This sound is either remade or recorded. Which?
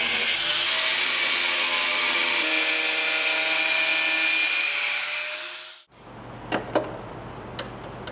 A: recorded